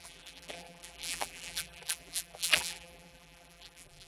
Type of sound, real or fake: fake